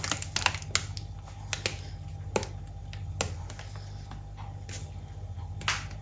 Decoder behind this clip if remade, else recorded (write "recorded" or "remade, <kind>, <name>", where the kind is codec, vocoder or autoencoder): recorded